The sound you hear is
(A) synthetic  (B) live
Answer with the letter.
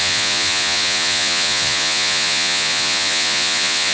A